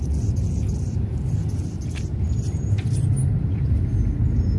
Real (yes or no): yes